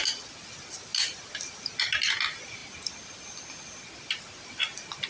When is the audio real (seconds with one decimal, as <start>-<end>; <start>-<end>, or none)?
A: 0.0-5.1